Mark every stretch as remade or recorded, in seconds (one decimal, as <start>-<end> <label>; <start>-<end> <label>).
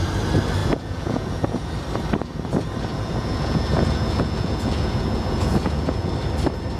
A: 0.0-0.6 recorded; 0.6-1.7 remade; 1.7-2.9 recorded; 2.9-6.1 remade; 6.1-6.8 recorded